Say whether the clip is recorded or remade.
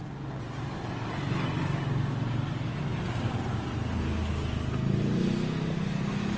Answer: recorded